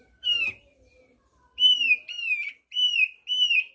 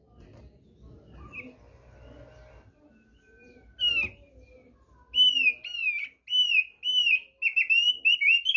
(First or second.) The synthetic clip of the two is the first